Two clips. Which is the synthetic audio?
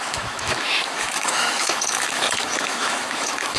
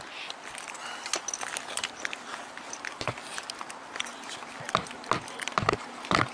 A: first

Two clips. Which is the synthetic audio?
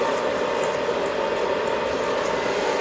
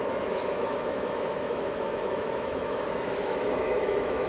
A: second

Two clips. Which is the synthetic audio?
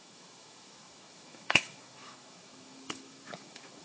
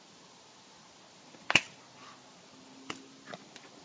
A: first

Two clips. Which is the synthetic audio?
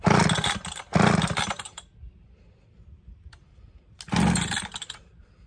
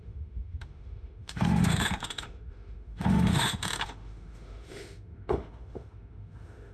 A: second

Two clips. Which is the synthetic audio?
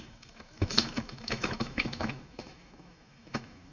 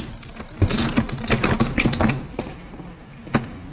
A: first